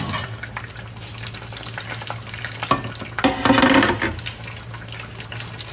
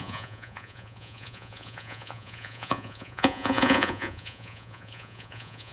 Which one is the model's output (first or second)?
second